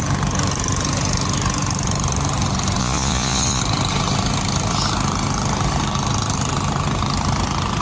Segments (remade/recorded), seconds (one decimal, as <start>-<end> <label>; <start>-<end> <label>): 0.0-2.8 recorded; 2.8-3.6 remade; 3.6-7.8 recorded